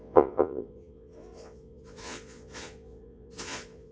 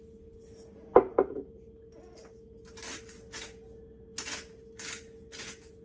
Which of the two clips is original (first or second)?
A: second